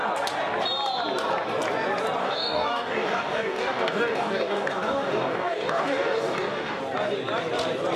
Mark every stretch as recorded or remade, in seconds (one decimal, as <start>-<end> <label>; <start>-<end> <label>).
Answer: 0.0-2.2 recorded; 2.2-6.8 remade; 6.8-8.0 recorded